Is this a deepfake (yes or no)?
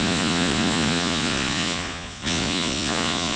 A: yes